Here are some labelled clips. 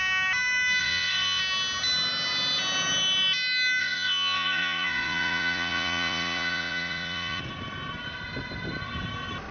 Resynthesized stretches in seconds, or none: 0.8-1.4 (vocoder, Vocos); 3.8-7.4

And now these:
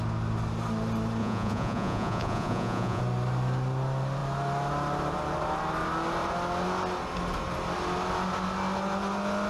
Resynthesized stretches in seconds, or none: 1.2-3.0 (vocoder, Vocos)

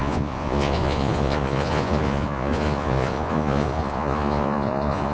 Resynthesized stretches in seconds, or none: 0.0-5.1 (vocoder, Vocos)

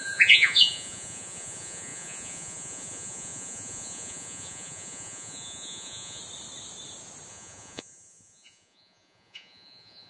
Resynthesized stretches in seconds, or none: 0.0-6.2 (vocoder, Vocos); 7.3-10.1